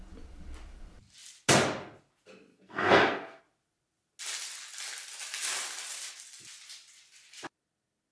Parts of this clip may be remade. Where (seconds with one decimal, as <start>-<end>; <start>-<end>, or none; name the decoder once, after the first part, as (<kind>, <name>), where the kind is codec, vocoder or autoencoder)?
2.5-3.4 (codec, SNAC)

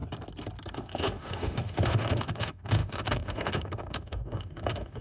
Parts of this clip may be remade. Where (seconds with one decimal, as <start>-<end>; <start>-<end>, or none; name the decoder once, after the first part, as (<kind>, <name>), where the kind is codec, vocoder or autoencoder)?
0.7-5.0 (autoencoder, DAC-VAE)

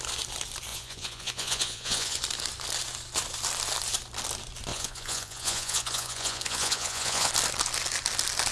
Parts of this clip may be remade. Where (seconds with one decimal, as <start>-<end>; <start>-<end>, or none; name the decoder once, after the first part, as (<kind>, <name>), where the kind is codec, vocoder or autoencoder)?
0.7-2.2 (vocoder, Vocos); 4.7-7.3

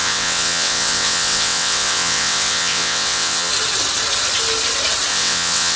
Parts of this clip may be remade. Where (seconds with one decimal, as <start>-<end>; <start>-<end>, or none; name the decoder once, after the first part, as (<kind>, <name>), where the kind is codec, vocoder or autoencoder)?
0.0-3.5 (vocoder, WaveNeXt); 5.1-5.8

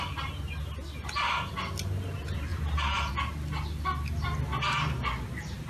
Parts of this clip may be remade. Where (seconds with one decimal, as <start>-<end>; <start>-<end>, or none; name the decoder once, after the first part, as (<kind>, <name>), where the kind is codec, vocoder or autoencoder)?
2.5-3.1 (vocoder, BigVGAN v2)

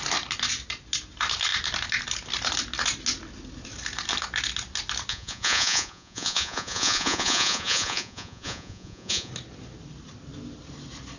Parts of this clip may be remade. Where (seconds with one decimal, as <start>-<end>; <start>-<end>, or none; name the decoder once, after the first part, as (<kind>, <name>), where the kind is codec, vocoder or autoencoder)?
5.1-9.3 (vocoder, Vocos)

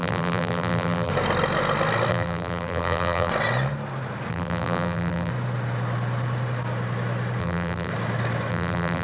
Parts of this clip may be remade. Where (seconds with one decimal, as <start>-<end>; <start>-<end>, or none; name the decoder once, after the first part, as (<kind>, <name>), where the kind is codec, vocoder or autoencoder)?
0.0-1.1 (vocoder, BigVGAN v2); 2.1-3.3; 4.3-5.3; 7.4-7.9; 8.5-9.0

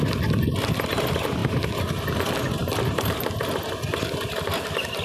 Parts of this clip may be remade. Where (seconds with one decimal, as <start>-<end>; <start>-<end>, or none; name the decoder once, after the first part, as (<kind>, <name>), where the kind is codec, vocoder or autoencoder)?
none